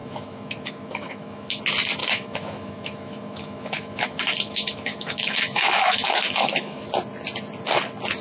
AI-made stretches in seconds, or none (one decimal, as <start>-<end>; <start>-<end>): 0.0-1.6; 2.0-6.9